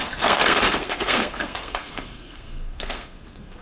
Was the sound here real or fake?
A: fake